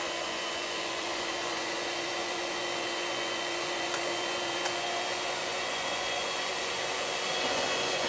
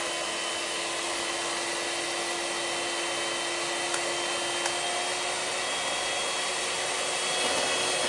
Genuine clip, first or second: second